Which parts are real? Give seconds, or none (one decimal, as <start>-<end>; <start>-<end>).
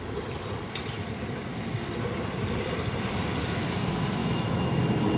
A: 0.0-4.2; 4.8-5.2